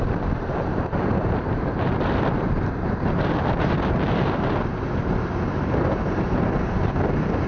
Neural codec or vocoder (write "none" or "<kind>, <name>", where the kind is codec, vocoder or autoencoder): vocoder, BigVGAN v2